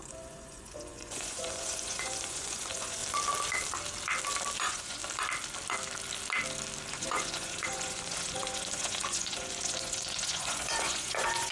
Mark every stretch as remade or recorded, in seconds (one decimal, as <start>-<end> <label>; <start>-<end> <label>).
0.0-3.0 remade; 3.0-4.6 recorded; 4.6-5.0 remade; 5.0-6.9 recorded; 6.9-11.5 remade